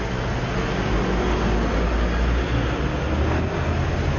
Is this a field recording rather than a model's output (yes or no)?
yes